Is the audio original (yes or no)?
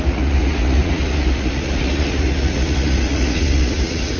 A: no